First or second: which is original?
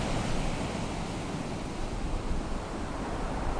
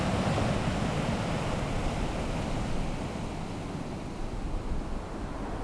second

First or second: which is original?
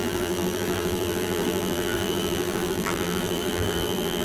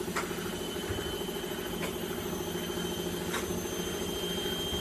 second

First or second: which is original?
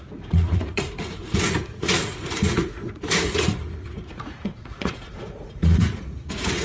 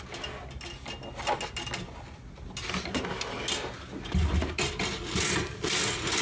second